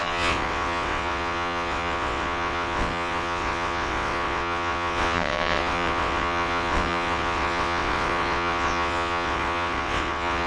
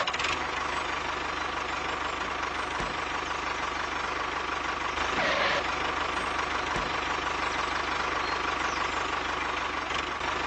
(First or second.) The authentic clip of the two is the second